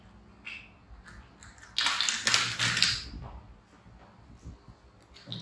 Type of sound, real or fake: real